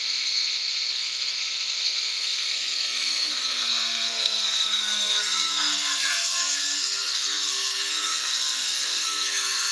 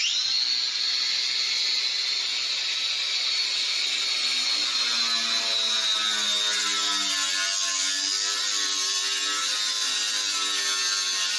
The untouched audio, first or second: second